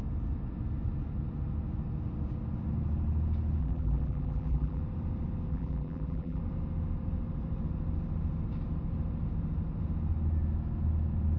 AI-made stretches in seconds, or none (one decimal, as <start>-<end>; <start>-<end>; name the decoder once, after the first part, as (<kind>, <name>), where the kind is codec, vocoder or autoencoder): 3.6-4.8 (vocoder, BigVGAN v2); 5.5-6.4